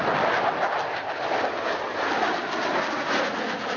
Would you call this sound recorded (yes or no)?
yes